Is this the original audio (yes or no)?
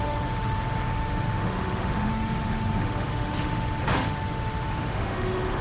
no